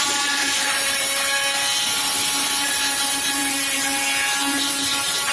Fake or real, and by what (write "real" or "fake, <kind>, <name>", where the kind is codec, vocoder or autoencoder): fake, vocoder, BigVGAN v2